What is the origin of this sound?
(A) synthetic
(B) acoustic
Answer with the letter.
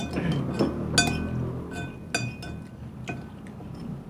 B